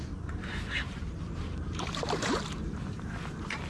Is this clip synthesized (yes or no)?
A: yes